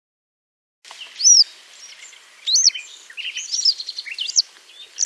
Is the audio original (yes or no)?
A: yes